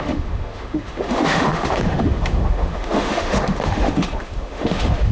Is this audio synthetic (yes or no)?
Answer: yes